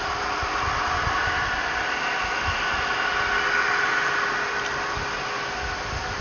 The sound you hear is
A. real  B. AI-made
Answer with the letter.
A